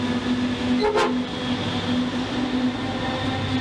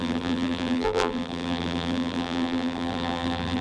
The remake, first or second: second